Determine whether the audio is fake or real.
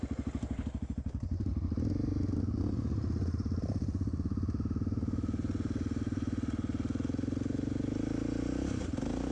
real